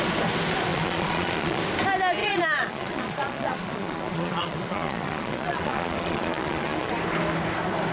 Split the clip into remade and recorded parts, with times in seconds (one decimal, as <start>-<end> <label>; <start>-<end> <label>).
0.0-0.7 recorded; 0.7-1.6 remade; 1.6-2.2 recorded; 2.2-6.9 remade; 6.9-7.9 recorded